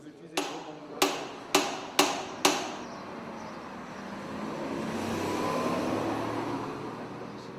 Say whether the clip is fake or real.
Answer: real